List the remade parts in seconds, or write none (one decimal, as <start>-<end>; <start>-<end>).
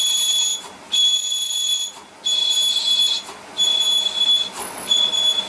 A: 4.6-5.1